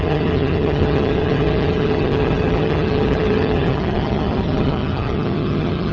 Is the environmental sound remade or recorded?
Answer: remade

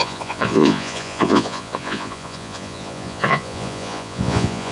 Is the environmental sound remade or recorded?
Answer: remade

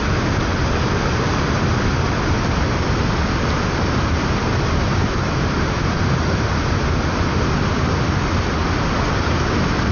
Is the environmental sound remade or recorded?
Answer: recorded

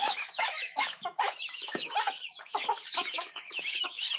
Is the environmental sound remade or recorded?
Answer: remade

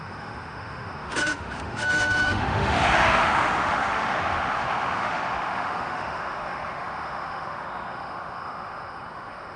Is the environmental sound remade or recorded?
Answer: remade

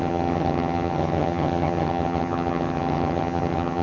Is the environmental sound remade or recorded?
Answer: remade